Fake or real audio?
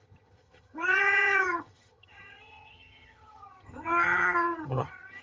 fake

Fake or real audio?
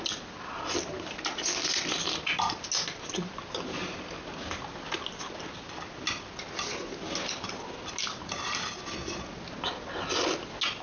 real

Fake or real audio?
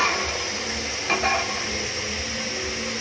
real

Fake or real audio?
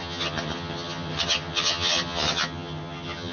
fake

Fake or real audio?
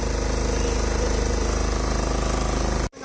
real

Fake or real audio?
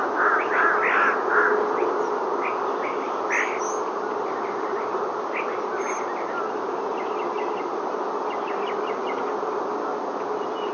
real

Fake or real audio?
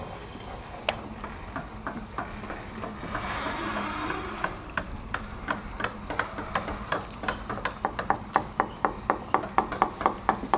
real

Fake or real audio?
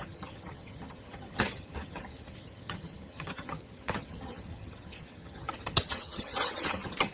fake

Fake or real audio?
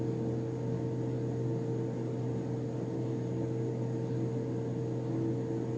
real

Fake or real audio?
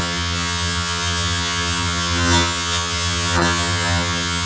fake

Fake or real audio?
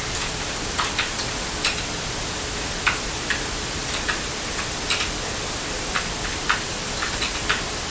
real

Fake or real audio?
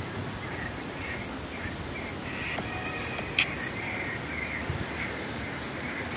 real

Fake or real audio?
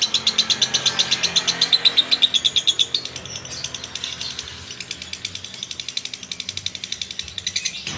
real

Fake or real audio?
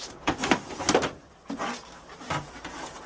real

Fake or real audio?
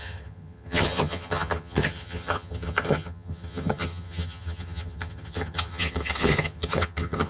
fake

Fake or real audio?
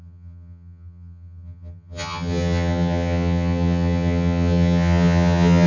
fake